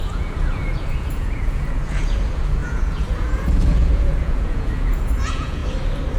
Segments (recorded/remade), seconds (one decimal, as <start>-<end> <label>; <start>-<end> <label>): 0.0-5.6 remade; 5.6-6.2 recorded